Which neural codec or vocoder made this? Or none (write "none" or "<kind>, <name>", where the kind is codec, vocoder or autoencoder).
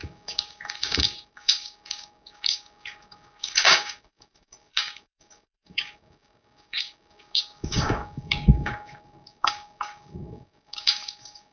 codec, DAC